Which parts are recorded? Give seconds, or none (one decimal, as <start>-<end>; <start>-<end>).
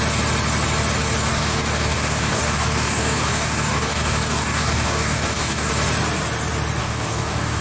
0.0-1.3; 5.7-6.8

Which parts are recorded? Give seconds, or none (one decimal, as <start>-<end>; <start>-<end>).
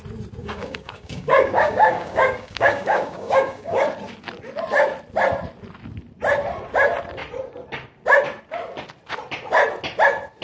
0.0-0.4; 3.8-10.4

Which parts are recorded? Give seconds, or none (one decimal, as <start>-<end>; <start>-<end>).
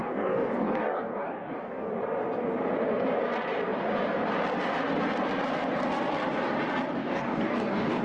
1.9-7.0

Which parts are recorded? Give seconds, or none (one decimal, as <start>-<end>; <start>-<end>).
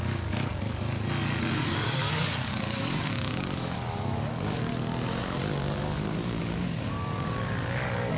0.5-1.5; 4.7-5.2